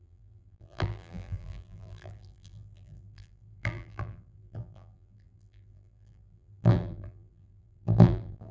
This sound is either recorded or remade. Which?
remade